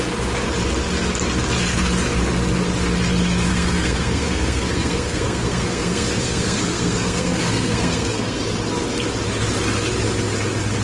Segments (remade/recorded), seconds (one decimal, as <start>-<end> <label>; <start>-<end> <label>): 0.0-3.5 recorded; 3.5-8.4 remade; 8.4-10.8 recorded